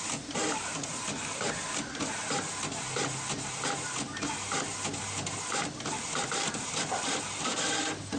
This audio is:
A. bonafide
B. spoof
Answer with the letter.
A